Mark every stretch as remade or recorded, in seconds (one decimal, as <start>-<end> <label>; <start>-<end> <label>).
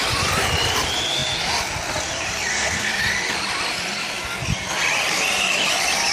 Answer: 0.0-2.5 recorded; 2.5-3.0 remade; 3.0-6.1 recorded